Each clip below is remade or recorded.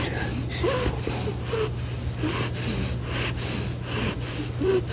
recorded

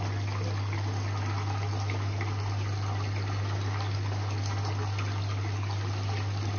recorded